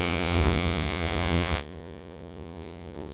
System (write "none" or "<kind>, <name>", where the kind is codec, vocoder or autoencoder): vocoder, Vocos